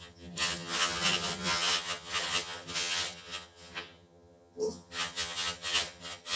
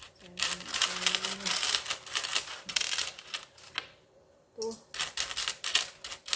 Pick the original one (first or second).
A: second